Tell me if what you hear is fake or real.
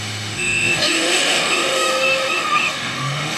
fake